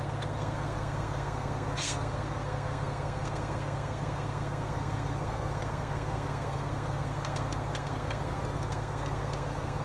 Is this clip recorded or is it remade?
remade